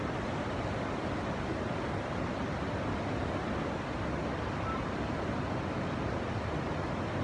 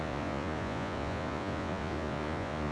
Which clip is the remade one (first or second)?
second